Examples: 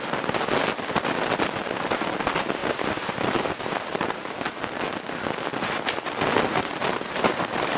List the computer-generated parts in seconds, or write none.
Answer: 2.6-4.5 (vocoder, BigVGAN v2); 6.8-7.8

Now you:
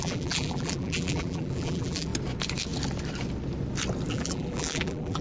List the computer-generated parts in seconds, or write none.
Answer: 0.0-2.1 (vocoder, BigVGAN v2); 4.1-5.2

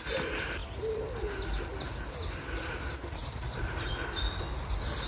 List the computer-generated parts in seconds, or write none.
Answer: 3.2-3.9 (vocoder, BigVGAN v2)

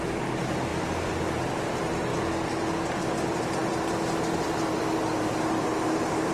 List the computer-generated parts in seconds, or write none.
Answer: 0.7-1.4 (vocoder, BigVGAN v2)

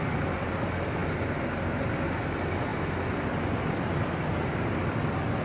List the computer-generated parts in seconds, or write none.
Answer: none

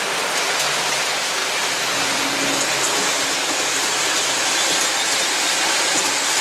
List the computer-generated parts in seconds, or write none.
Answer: none

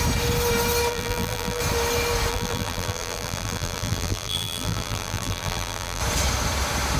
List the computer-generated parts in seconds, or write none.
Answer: 0.9-1.6 (vocoder, BigVGAN v2); 2.3-6.0

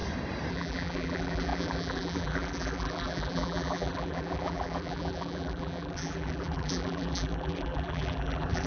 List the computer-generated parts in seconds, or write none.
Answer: 0.5-8.7 (vocoder, BigVGAN v2)